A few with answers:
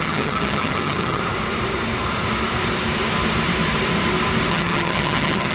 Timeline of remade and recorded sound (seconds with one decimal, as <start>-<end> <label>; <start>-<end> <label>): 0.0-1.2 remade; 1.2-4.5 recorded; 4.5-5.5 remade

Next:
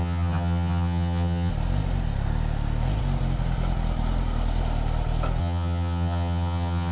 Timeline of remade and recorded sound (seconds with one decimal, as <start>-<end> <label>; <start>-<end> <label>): 0.0-1.5 remade; 1.5-5.4 recorded; 5.4-6.9 remade

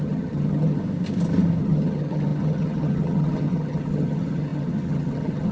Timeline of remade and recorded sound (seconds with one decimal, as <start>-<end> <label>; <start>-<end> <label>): 0.0-0.8 remade; 0.8-1.6 recorded; 1.6-5.5 remade